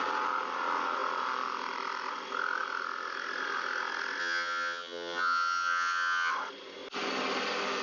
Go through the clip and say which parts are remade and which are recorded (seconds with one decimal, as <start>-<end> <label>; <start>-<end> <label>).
0.0-4.2 recorded; 4.2-6.3 remade; 6.3-7.8 recorded